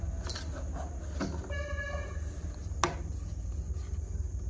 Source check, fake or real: real